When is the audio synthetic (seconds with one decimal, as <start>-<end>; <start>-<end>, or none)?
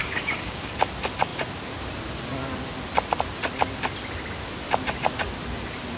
0.0-0.7